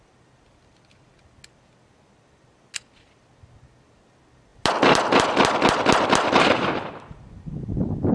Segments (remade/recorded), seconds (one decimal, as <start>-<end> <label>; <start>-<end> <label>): 0.0-8.1 recorded